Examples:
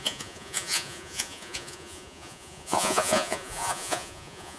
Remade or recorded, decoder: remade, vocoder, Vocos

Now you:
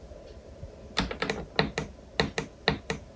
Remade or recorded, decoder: recorded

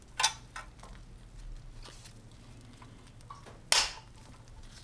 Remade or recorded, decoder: recorded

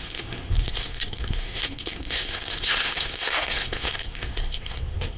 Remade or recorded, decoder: remade, codec, SNAC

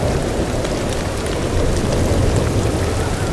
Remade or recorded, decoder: recorded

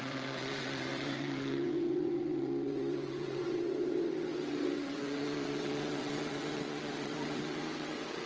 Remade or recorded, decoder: remade, vocoder, WaveNeXt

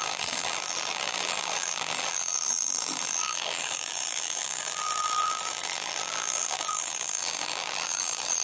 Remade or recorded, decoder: remade, vocoder, BigVGAN v2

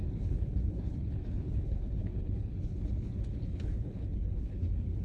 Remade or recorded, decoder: remade, codec, HILCodec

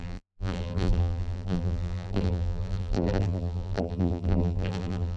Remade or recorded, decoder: remade, vocoder, BigVGAN v2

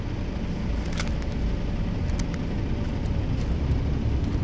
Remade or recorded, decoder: recorded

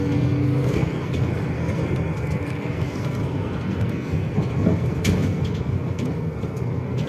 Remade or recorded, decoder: remade, codec, SNAC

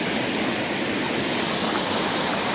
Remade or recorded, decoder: recorded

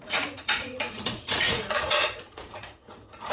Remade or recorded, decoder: remade, vocoder, Vocos